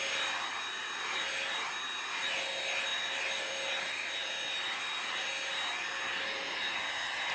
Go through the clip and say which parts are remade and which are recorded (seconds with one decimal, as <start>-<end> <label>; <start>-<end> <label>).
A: 0.0-7.3 recorded

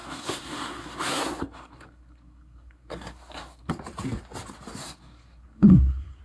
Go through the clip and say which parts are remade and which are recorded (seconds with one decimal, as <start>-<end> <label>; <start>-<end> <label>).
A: 0.0-3.7 remade; 3.7-4.8 recorded; 4.8-6.2 remade

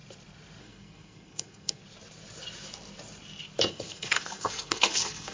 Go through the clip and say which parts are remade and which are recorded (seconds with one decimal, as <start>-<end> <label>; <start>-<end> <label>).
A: 0.0-0.6 recorded; 0.6-1.8 remade; 1.8-3.7 recorded; 3.7-5.3 remade

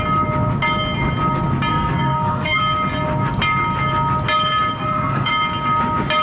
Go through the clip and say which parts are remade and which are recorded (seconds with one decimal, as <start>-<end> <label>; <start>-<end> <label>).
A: 0.0-1.7 recorded; 1.7-2.6 remade; 2.6-4.8 recorded; 4.8-5.3 remade; 5.3-6.2 recorded